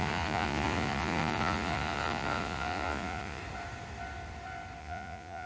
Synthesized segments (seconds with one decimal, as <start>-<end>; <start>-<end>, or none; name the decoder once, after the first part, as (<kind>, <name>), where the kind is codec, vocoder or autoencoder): 0.0-3.4 (vocoder, Vocos); 4.8-5.5